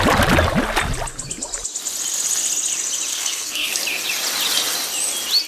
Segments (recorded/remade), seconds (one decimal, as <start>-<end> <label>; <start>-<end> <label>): 0.0-3.1 recorded; 3.1-3.7 remade; 3.7-5.5 recorded